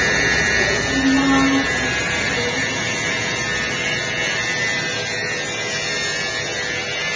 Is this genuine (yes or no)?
yes